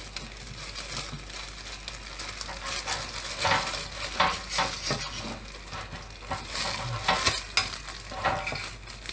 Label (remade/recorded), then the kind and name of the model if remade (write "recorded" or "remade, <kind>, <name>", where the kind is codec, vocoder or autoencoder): recorded